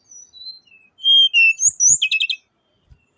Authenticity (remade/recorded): recorded